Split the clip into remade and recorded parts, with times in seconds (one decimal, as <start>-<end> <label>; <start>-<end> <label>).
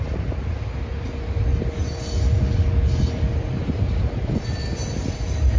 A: 0.0-5.6 recorded